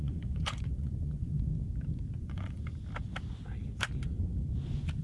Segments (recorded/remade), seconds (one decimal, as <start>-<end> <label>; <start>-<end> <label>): 0.0-1.5 remade; 1.5-2.2 recorded; 2.2-2.7 remade; 2.7-5.0 recorded